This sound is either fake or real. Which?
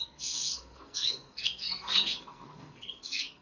fake